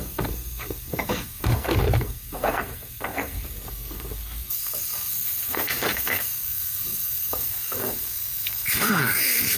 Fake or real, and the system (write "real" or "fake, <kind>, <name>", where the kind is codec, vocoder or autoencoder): fake, codec, SNAC